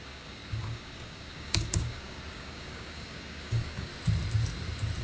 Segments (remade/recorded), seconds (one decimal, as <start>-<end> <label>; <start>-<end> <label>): 0.0-3.9 remade; 3.9-5.0 recorded